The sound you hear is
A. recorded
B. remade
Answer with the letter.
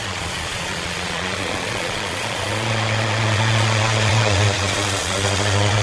B